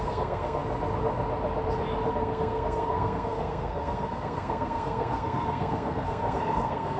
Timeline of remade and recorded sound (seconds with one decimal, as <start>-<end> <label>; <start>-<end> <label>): 0.0-0.6 remade; 0.6-2.1 recorded; 2.1-7.0 remade